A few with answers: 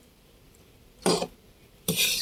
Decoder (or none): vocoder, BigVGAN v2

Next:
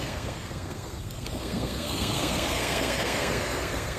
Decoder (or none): codec, SNAC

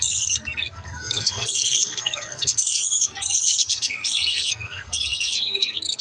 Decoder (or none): codec, SNAC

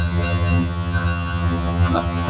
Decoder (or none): vocoder, HiFi-GAN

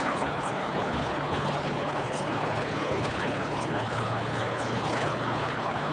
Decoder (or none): codec, HILCodec